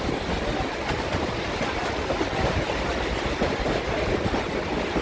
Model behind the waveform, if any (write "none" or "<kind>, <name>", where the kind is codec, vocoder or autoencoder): none